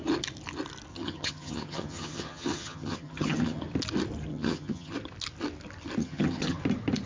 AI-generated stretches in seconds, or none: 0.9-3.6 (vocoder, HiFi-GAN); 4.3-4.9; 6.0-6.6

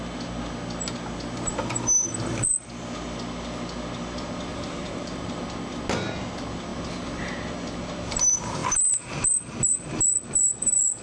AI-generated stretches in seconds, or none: 4.5-5.4 (vocoder, BigVGAN v2); 8.6-9.1

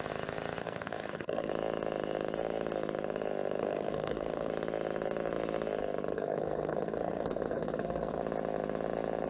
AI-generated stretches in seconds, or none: 0.6-1.5 (codec, SNAC); 3.6-4.5; 6.1-8.2